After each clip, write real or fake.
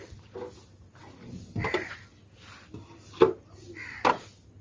real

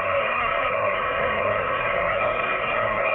fake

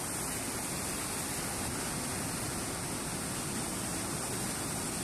real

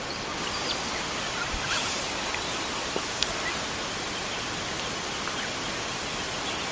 real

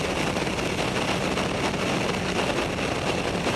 real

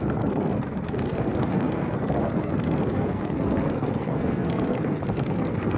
fake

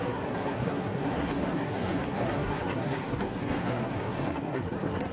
fake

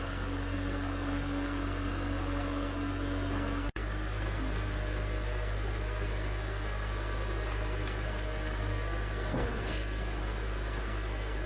fake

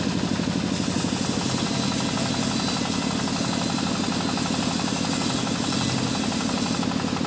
real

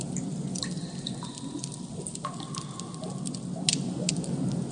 real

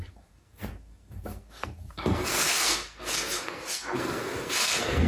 fake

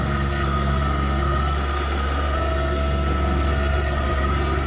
fake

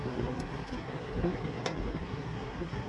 fake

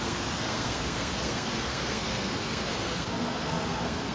fake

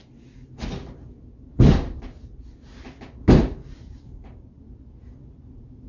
real